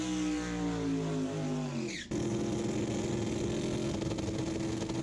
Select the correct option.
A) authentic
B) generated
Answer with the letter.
A